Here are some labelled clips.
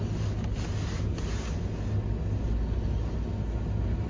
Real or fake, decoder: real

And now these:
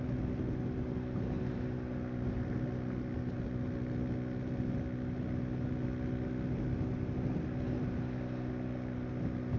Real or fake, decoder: real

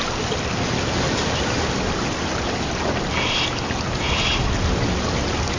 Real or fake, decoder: real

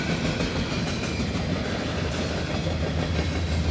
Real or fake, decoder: real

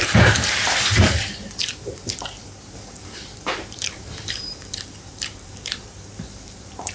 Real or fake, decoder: fake, vocoder, BigVGAN v2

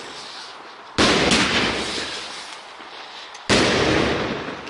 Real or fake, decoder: real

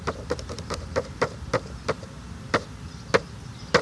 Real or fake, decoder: real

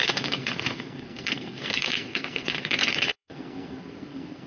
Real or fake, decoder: fake, codec, SNAC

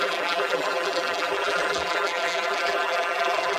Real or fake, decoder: fake, vocoder, BigVGAN v2